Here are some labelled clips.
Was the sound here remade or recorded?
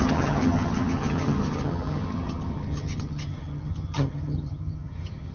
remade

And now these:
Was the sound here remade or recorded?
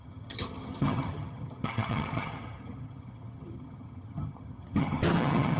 remade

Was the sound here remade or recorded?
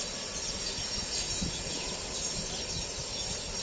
recorded